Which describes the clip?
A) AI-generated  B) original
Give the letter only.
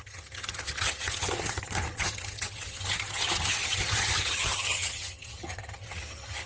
A